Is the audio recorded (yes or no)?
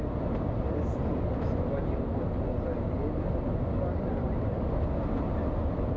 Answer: yes